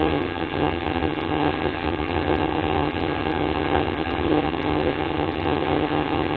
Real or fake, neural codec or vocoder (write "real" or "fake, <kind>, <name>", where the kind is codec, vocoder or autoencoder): fake, vocoder, HiFi-GAN